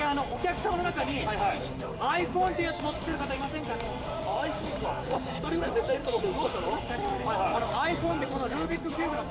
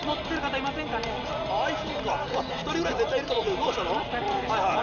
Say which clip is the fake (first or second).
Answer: first